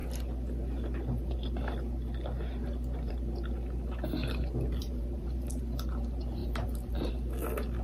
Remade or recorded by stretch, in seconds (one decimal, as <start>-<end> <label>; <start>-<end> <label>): 0.0-4.8 recorded; 4.8-5.6 remade; 5.6-6.4 recorded; 6.4-7.1 remade; 7.1-7.8 recorded